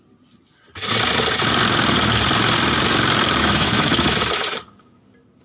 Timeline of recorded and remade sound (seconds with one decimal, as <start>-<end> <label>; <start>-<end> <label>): 0.0-3.4 recorded; 3.4-4.2 remade; 4.2-5.4 recorded